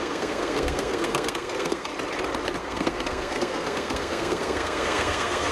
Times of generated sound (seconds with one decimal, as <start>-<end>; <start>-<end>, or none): 0.0-1.9; 2.6-5.5